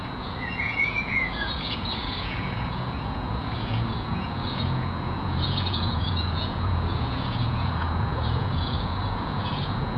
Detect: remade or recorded remade